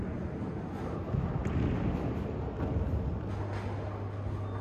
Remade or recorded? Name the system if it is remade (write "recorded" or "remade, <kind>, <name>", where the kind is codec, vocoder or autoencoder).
recorded